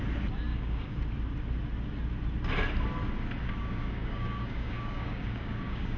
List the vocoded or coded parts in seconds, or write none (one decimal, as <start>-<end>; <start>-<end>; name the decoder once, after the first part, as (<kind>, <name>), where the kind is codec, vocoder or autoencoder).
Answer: 0.5-1.0 (codec, DAC); 3.4-6.0